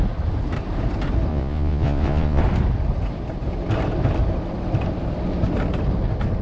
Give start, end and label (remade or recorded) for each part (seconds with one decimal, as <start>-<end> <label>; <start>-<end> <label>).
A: 0.0-1.3 recorded; 1.3-2.4 remade; 2.4-6.4 recorded

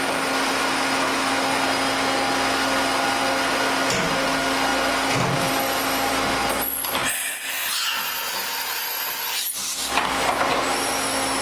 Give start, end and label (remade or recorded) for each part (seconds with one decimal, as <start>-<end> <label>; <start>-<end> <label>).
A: 0.0-11.4 recorded

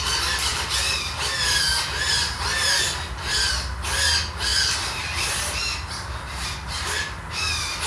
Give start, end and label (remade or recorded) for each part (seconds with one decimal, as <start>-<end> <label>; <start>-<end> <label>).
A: 0.0-7.9 recorded

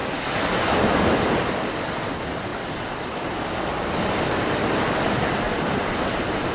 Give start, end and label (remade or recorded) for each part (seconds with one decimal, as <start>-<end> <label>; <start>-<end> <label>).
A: 0.0-6.5 recorded

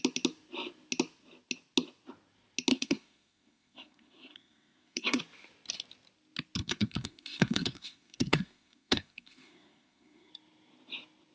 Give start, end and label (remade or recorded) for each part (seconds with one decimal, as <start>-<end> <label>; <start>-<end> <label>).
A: 0.0-2.7 recorded; 2.7-5.2 remade; 5.2-6.6 recorded; 6.6-10.3 remade; 10.3-11.3 recorded

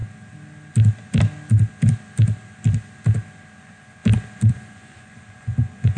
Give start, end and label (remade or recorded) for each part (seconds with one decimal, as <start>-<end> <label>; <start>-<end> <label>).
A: 0.0-3.6 recorded; 3.6-4.0 remade; 4.0-4.5 recorded; 4.5-6.0 remade